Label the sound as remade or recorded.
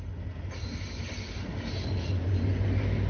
recorded